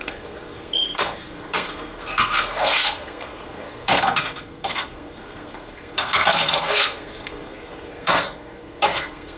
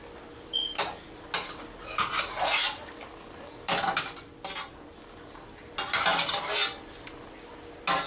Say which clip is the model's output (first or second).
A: first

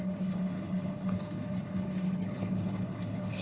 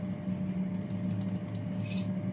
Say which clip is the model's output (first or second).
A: first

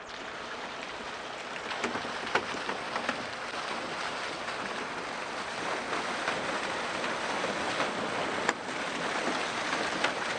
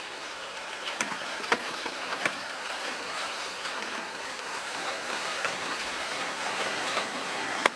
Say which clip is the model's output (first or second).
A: second